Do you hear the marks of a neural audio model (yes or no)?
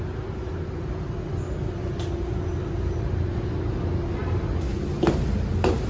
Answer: no